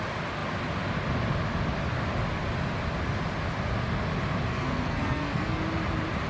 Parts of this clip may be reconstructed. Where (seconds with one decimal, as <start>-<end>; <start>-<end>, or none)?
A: 4.5-5.6